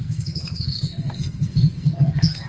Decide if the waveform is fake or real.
fake